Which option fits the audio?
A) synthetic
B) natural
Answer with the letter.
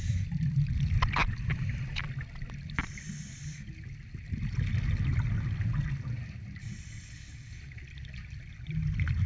B